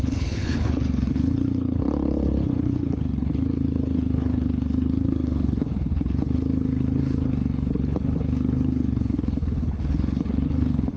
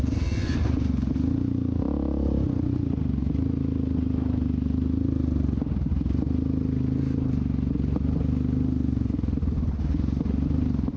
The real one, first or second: second